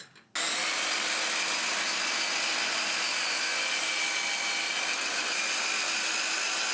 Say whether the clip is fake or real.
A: real